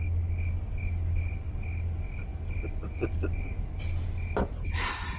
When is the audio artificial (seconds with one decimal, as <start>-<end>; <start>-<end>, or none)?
none